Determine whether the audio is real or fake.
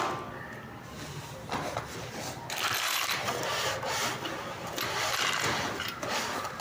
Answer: real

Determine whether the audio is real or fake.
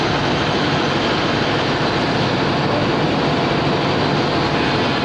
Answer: real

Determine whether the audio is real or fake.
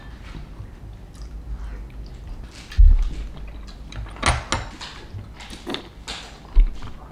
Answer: real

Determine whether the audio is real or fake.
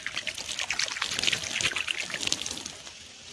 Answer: real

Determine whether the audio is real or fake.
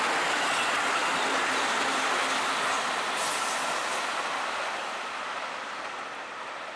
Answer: real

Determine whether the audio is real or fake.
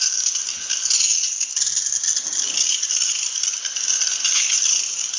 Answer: real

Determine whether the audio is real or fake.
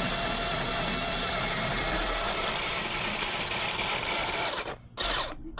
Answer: real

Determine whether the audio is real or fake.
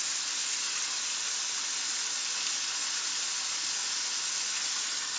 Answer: real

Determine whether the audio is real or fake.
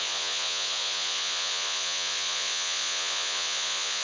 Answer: fake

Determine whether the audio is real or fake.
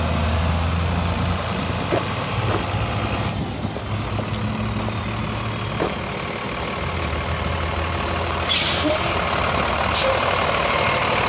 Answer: real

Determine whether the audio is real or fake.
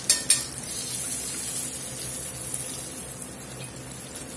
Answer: real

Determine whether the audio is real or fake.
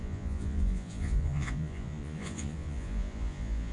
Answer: fake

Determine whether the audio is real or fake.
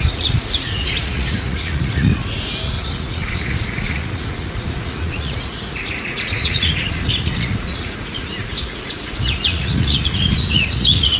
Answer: fake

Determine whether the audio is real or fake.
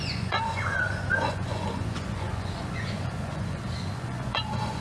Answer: fake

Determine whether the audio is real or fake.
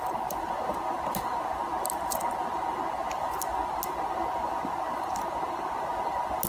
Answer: real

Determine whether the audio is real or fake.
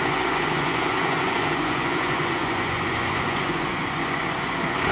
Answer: fake